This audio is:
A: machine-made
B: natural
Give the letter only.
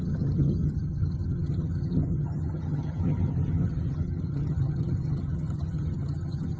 A